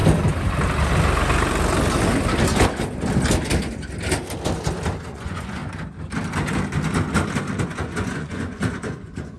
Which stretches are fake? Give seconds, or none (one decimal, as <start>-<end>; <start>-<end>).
5.0-5.6; 7.6-9.4